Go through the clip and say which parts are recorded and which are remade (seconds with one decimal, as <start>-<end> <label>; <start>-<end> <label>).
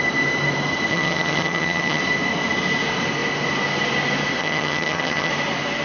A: 0.0-0.9 recorded; 0.9-2.0 remade; 2.0-4.4 recorded; 4.4-5.3 remade; 5.3-5.8 recorded